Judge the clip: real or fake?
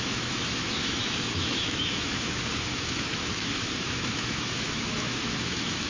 fake